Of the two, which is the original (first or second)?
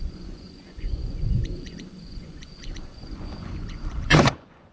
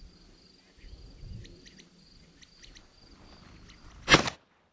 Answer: second